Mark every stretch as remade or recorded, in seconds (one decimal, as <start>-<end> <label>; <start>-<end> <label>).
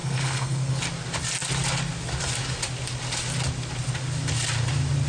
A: 0.0-0.8 remade; 0.8-5.1 recorded